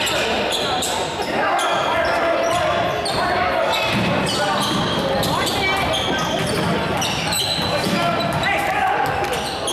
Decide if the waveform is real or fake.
real